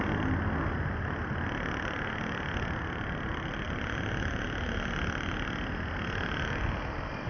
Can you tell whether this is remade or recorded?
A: recorded